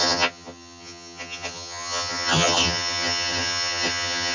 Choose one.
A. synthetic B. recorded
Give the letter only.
A